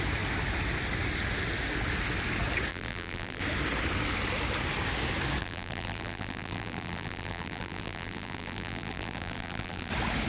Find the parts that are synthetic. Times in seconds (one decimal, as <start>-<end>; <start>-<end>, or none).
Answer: 2.7-3.4; 5.4-9.9